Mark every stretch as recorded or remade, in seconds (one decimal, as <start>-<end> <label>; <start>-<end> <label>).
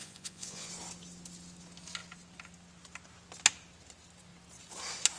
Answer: 0.0-0.7 remade; 0.7-5.2 recorded